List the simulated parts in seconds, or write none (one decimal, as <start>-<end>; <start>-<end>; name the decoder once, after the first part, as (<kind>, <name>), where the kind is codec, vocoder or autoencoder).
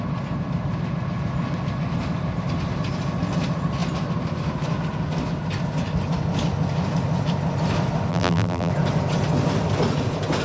8.1-8.7 (vocoder, BigVGAN v2)